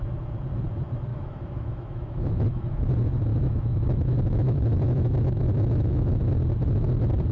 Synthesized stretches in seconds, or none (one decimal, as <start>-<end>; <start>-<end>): 1.1-2.9; 3.3-6.2

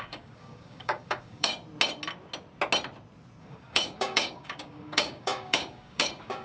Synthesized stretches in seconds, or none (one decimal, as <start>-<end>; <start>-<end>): 0.0-1.5; 3.4-6.4

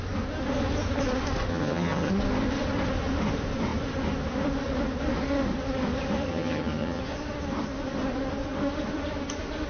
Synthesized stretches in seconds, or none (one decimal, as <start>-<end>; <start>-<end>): 1.5-2.1; 6.3-7.0

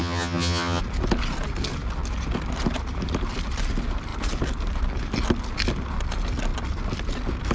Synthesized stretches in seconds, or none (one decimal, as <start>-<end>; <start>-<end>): 0.0-0.8

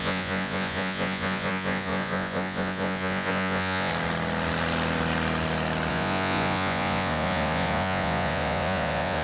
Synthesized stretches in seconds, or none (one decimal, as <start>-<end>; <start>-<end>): 0.0-3.9; 5.9-9.2

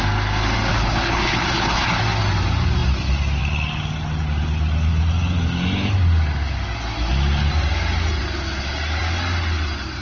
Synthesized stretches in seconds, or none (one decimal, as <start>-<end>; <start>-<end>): 0.7-2.0

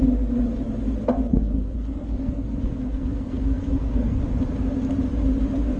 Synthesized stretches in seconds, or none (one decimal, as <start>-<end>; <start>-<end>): 1.3-4.2